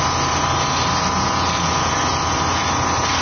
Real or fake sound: real